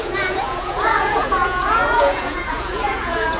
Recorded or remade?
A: remade